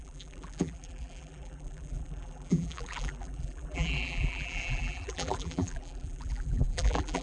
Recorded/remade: remade